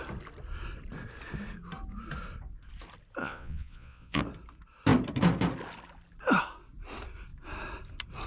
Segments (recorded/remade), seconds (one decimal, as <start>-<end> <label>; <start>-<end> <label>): 0.0-3.2 recorded; 3.2-4.2 remade; 4.2-8.3 recorded